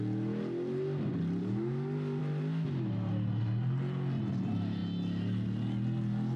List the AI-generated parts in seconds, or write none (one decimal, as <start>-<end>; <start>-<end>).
1.4-2.2